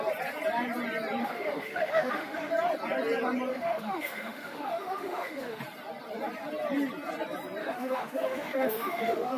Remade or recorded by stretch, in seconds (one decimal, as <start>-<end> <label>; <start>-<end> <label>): 0.0-1.2 recorded; 1.2-2.5 remade; 2.5-3.5 recorded; 3.5-5.6 remade; 5.6-7.6 recorded; 7.6-9.4 remade

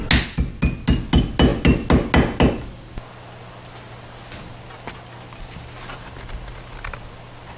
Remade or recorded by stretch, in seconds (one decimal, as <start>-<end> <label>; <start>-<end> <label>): 0.0-7.6 recorded

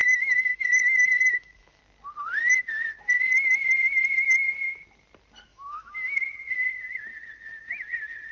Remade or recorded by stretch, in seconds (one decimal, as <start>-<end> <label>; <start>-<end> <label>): 0.0-1.8 remade; 1.8-5.5 recorded; 5.5-6.2 remade; 6.2-8.3 recorded

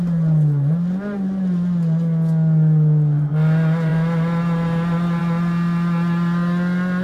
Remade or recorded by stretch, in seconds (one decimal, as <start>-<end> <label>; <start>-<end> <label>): 0.0-7.0 recorded

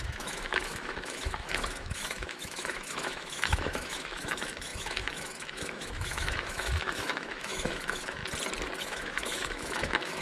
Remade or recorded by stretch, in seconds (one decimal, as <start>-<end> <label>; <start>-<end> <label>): 0.0-8.2 remade; 8.2-8.8 recorded; 8.8-10.2 remade

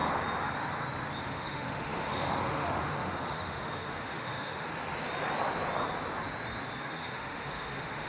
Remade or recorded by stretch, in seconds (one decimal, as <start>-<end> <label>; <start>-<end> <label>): 0.0-1.2 recorded; 1.2-4.7 remade; 4.7-6.8 recorded; 6.8-8.1 remade

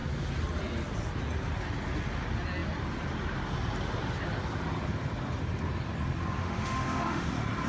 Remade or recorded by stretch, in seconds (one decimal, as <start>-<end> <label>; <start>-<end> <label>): 0.0-6.4 recorded; 6.4-7.3 remade; 7.3-7.7 recorded

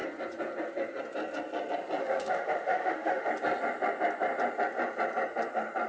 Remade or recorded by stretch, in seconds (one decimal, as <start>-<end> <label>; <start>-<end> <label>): 0.0-2.0 recorded; 2.0-3.3 remade; 3.3-5.9 recorded